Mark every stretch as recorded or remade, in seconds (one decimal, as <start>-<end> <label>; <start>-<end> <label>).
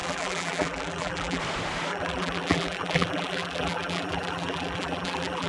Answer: 0.0-1.4 remade; 1.4-1.9 recorded; 1.9-5.5 remade